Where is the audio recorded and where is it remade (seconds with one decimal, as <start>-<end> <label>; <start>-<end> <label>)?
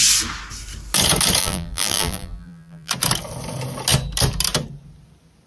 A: 0.0-1.4 recorded; 1.4-2.9 remade; 2.9-5.5 recorded